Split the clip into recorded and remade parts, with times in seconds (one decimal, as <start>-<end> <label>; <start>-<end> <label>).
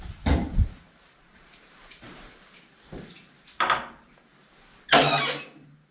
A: 0.0-0.6 recorded; 0.6-2.8 remade; 2.8-5.0 recorded; 5.0-5.9 remade